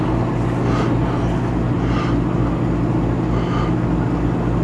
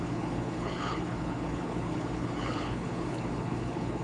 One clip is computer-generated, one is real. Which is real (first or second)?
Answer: first